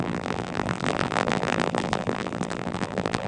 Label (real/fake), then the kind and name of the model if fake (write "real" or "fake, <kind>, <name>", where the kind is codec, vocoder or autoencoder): fake, vocoder, BigVGAN v2